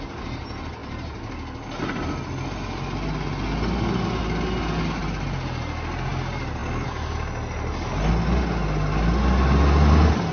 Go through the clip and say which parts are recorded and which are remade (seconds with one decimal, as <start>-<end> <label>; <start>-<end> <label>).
0.0-10.3 recorded